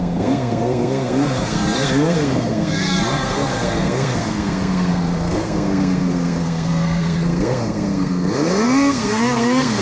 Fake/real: fake